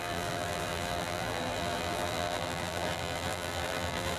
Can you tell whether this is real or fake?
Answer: fake